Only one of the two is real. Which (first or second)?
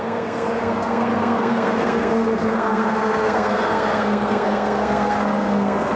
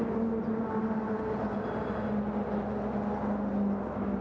second